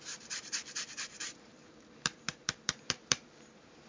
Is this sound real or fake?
fake